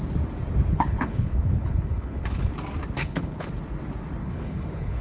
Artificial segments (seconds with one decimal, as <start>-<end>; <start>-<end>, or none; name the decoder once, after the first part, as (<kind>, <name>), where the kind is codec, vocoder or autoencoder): 0.7-2.5 (codec, HILCodec); 3.0-3.5; 4.2-5.0